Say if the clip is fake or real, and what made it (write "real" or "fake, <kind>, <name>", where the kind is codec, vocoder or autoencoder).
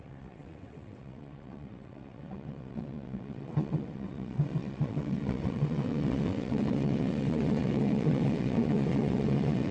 fake, vocoder, WaveNeXt